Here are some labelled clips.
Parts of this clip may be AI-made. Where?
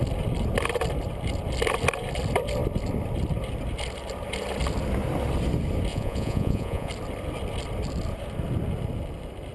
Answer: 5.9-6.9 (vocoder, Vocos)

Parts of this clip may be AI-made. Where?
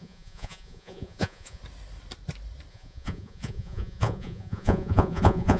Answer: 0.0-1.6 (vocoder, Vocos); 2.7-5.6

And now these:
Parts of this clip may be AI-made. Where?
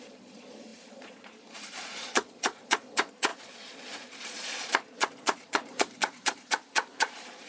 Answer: 0.0-6.5 (vocoder, Vocos); 7.0-7.5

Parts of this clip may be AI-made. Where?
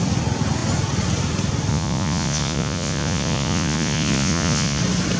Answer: 1.7-4.8 (vocoder, Vocos)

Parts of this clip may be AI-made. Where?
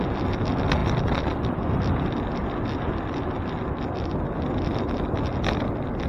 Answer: none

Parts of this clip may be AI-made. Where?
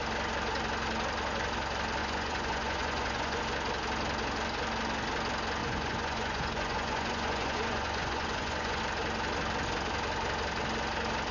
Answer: 2.0-3.4 (vocoder, Vocos); 5.6-8.8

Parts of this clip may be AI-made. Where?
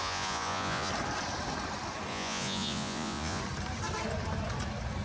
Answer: 0.0-0.9 (vocoder, Vocos); 2.1-3.4